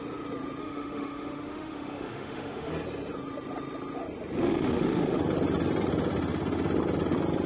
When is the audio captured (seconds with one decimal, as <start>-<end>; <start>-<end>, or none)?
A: 0.0-0.6; 2.7-4.4; 5.2-7.5